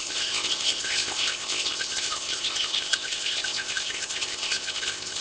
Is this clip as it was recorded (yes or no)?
no